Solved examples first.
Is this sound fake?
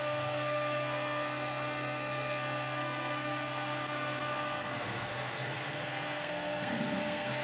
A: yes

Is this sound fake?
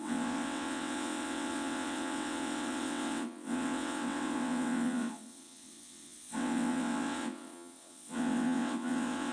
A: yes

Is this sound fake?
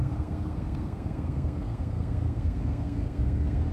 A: yes